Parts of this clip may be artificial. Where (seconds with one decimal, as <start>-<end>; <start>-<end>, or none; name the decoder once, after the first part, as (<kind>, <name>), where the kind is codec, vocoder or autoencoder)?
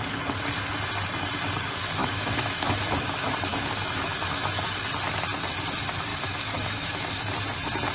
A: 2.0-4.7 (autoencoder, DAC-VAE); 6.1-7.1